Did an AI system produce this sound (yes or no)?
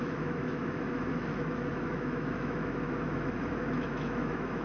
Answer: yes